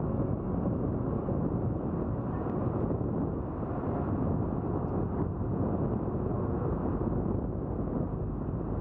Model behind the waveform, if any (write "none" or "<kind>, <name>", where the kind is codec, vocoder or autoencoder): none